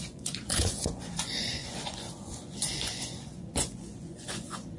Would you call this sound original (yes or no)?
no